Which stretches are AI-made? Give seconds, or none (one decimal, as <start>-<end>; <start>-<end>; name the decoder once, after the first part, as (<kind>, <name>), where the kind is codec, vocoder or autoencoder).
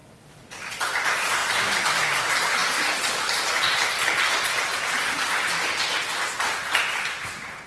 0.0-0.8 (vocoder, BigVGAN v2); 1.4-2.2; 6.6-7.3